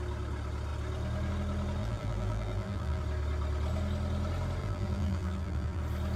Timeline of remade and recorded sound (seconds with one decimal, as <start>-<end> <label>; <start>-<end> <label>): 0.0-1.8 recorded; 1.8-3.0 remade; 3.0-4.6 recorded; 4.6-5.8 remade; 5.8-6.2 recorded